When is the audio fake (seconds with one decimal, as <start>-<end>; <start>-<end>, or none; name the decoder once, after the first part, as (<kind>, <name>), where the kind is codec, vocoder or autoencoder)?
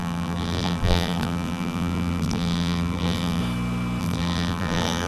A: 0.0-3.4 (vocoder, BigVGAN v2); 4.0-5.1